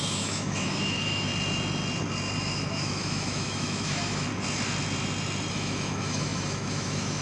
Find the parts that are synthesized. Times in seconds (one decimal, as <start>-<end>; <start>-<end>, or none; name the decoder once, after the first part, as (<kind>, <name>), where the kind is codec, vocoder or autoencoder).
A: 0.0-1.3 (autoencoder, DAC-VAE); 2.4-4.3; 5.5-7.2